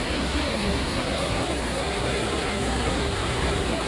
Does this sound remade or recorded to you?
remade